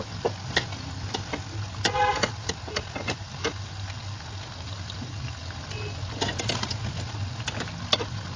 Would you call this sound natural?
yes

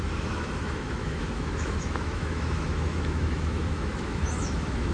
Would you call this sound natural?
no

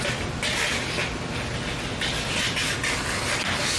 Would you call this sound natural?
yes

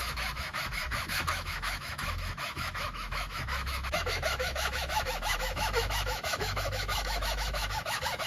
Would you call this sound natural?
no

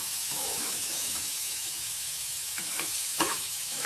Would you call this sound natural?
no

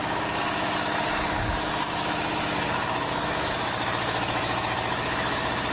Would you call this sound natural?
no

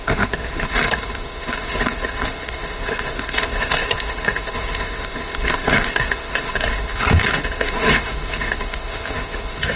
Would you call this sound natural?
no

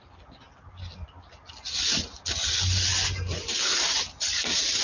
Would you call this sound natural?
yes